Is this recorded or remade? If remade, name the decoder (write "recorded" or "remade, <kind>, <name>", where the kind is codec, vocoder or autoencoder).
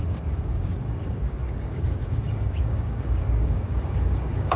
remade, codec, DAC